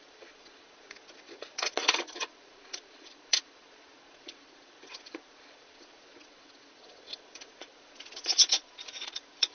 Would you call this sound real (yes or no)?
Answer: no